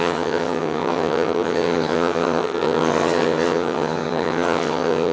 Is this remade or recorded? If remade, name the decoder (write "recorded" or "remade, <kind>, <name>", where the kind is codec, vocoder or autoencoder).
remade, vocoder, HiFi-GAN